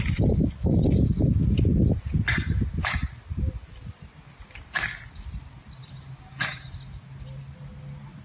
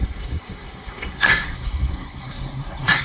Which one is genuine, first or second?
first